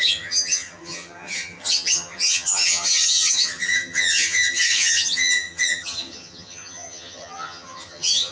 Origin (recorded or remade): remade